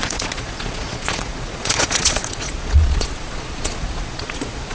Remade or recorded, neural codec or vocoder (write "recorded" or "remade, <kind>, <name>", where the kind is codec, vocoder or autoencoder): remade, vocoder, Vocos